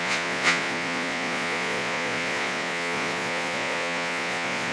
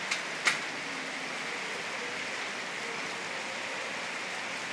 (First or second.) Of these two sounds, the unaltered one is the second